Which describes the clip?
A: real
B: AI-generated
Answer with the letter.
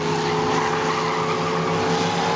A